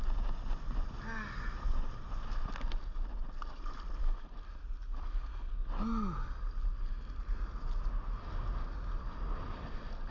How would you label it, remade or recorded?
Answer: recorded